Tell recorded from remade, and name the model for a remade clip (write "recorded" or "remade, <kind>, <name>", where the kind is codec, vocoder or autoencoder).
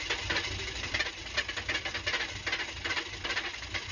recorded